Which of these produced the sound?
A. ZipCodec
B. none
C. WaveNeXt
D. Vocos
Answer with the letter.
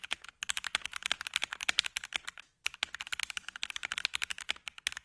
B